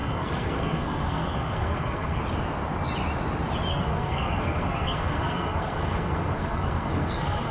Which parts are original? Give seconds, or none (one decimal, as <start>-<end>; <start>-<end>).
2.2-3.7